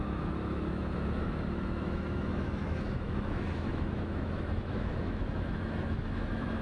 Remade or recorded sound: remade